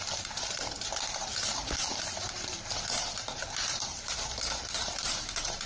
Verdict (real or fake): fake